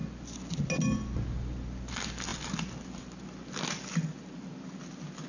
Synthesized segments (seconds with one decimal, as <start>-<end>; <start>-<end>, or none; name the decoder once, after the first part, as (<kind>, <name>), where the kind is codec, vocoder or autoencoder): none

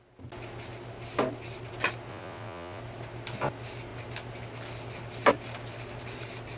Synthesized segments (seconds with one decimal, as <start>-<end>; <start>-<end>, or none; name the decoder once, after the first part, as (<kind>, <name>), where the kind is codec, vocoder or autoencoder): 2.1-2.8 (vocoder, Vocos)

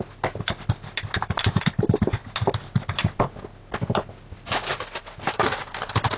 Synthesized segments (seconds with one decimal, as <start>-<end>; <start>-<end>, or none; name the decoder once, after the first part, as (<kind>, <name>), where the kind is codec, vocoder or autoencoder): none